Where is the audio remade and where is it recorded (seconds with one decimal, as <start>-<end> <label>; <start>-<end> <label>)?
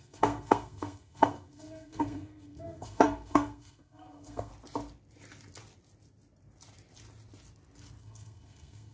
0.0-4.5 remade; 4.5-8.0 recorded; 8.0-8.9 remade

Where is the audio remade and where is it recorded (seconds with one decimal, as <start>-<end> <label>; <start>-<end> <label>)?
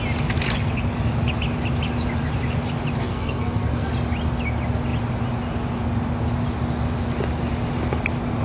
0.0-3.0 recorded; 3.0-3.9 remade; 3.9-8.4 recorded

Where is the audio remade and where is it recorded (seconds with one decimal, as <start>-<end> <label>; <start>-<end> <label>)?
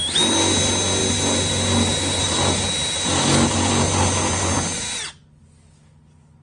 0.0-6.4 recorded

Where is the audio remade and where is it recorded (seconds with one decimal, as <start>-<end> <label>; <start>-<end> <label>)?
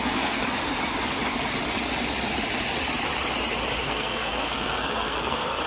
0.0-0.4 remade; 0.4-3.8 recorded; 3.8-5.7 remade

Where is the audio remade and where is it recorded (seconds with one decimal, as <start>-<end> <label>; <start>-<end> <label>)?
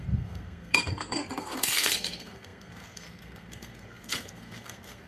0.0-5.1 remade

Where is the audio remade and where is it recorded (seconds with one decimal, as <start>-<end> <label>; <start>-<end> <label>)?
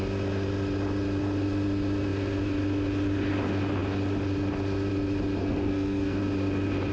0.0-5.4 recorded; 5.4-6.2 remade; 6.2-6.9 recorded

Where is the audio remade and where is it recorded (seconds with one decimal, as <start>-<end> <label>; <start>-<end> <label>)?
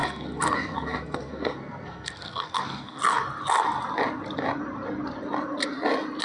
0.0-3.0 remade; 3.0-6.2 recorded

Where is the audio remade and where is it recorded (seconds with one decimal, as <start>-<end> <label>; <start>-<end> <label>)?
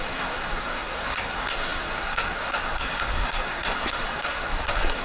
0.0-5.0 remade